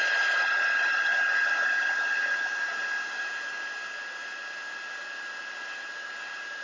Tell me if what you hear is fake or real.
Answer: real